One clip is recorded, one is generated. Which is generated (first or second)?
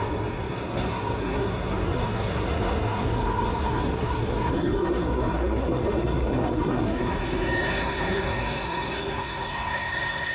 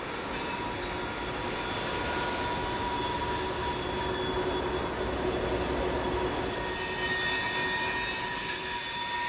first